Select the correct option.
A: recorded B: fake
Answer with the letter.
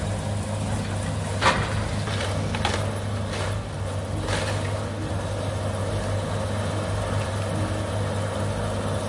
A